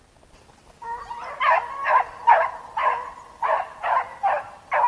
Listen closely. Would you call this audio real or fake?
real